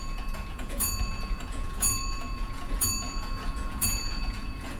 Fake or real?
fake